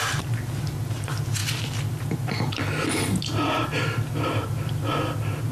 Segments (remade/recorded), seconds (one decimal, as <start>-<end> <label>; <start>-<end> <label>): 0.0-5.5 recorded